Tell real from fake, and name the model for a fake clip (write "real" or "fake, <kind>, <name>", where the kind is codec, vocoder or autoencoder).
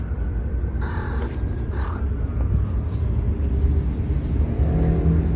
real